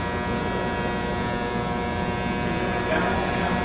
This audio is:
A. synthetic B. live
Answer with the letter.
B